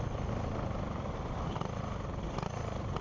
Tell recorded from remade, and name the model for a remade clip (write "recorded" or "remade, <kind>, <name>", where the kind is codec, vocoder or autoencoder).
recorded